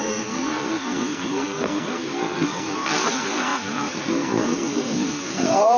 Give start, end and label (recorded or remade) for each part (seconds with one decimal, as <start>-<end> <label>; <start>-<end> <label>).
0.0-5.8 remade